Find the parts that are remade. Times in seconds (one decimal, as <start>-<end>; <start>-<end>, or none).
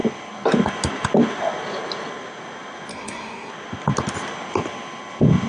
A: 2.9-3.5